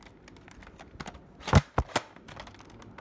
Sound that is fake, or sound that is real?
real